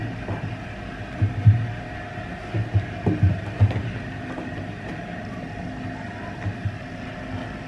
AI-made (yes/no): no